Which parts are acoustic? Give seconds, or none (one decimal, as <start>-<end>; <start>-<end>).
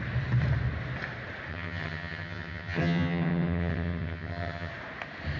0.0-1.5; 4.7-5.4